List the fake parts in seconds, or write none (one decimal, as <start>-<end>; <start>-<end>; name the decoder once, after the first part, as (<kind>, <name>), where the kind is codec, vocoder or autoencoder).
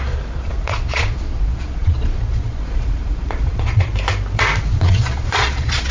0.0-3.9 (vocoder, Vocos); 4.6-5.9